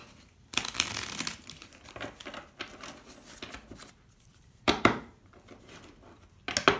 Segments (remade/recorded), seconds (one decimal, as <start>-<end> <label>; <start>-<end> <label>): 0.0-4.3 recorded; 4.3-5.1 remade; 5.1-6.8 recorded